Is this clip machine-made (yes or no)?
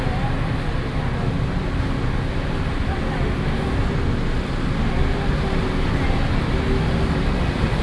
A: no